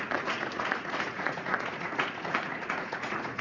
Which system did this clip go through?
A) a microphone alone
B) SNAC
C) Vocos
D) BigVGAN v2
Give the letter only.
C